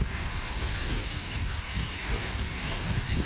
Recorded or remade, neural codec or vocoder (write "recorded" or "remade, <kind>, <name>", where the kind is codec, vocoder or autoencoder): remade, codec, DAC